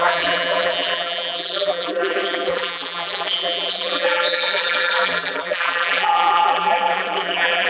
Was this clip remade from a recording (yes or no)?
yes